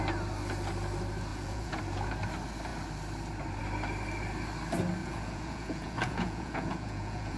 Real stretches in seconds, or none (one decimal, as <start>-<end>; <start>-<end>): 0.0-1.3; 1.8-5.0